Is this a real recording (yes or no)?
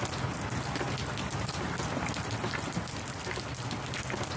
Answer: yes